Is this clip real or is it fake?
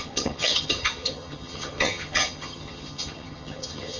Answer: fake